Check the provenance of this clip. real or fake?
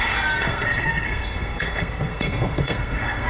fake